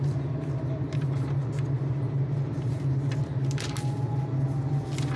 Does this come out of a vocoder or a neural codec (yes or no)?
no